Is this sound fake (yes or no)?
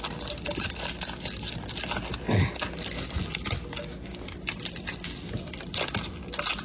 no